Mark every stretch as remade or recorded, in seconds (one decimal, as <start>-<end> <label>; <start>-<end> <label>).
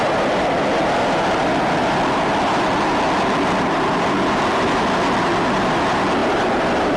0.0-7.0 recorded